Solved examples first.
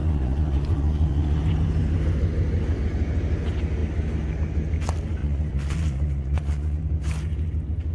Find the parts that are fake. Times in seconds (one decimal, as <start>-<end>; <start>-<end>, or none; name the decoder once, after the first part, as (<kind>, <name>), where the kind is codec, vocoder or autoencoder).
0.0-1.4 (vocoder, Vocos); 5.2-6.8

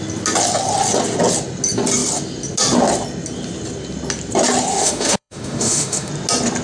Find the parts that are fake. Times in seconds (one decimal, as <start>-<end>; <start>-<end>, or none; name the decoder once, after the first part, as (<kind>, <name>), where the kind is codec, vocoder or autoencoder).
4.7-6.1 (autoencoder, DAC-VAE)

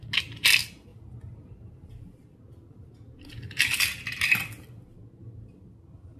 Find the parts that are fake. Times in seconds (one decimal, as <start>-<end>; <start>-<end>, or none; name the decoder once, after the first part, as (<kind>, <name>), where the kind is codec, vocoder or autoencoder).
none

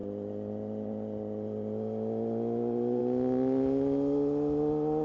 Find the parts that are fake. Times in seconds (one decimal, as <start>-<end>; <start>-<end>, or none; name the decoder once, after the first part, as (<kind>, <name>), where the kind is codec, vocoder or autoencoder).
none

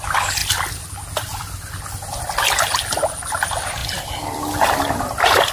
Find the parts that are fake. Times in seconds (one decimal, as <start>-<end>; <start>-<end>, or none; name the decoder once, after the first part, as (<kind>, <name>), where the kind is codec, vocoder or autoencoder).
none